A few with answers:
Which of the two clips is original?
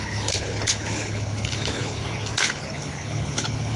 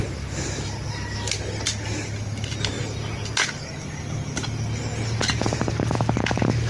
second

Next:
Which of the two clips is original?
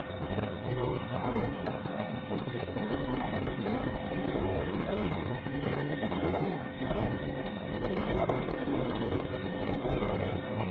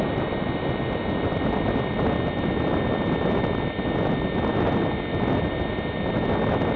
second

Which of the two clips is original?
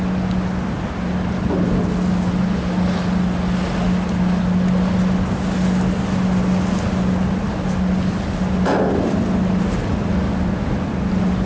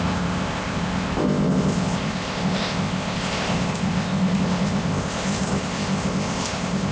first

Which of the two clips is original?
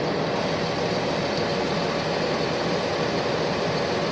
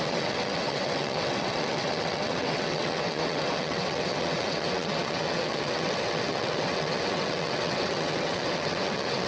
first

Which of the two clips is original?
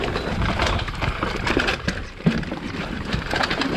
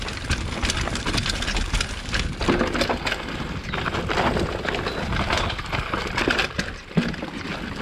second